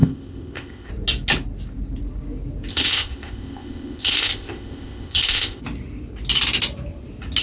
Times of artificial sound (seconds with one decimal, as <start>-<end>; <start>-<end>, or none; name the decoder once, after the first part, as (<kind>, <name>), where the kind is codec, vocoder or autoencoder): 0.0-0.9 (codec, ZipCodec); 2.7-5.6